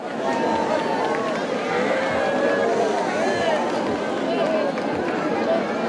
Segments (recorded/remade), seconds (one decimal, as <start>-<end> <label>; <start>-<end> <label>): 0.0-5.9 recorded